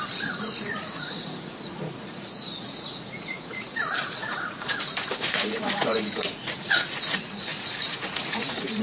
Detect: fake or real fake